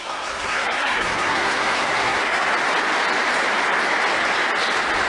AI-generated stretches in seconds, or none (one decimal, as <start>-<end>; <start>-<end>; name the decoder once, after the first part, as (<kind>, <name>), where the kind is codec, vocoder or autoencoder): 0.0-2.5 (codec, SNAC)